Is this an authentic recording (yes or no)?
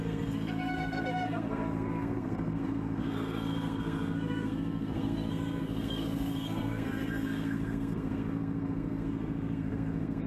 no